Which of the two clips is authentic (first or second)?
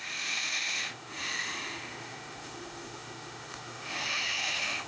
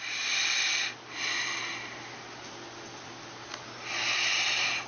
second